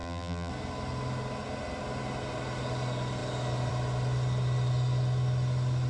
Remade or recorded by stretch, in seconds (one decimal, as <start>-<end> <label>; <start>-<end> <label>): 0.0-0.5 remade; 0.5-5.9 recorded